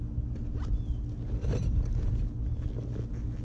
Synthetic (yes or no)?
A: no